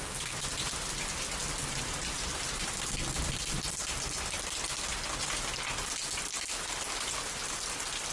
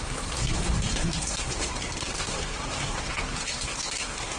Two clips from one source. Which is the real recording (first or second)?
first